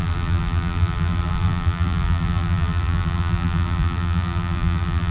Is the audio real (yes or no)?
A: no